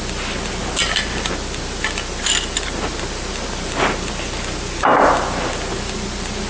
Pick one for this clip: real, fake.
real